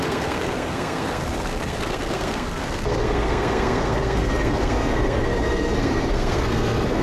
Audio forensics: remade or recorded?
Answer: remade